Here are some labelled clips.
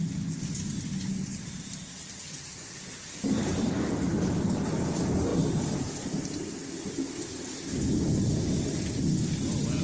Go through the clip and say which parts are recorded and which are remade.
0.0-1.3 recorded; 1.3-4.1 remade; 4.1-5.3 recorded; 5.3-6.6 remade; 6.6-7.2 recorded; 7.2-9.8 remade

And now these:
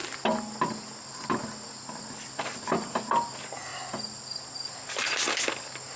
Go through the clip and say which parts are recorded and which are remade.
0.0-6.0 recorded

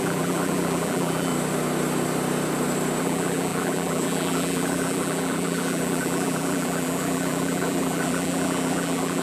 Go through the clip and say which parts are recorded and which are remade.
0.0-1.3 remade; 1.3-3.0 recorded; 3.0-9.2 remade